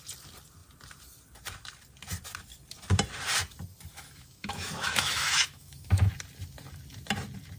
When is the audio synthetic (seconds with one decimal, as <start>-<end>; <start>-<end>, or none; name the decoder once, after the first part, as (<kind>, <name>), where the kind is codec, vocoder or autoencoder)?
3.9-6.1 (autoencoder, DAC-VAE)